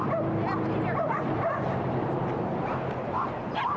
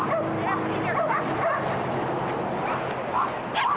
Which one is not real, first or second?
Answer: first